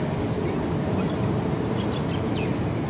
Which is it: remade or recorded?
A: recorded